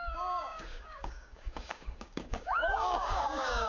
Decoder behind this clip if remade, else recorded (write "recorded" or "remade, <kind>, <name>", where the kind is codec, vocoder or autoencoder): remade, codec, DAC